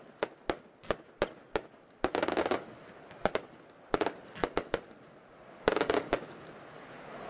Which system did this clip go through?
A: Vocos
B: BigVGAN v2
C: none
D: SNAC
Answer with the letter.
C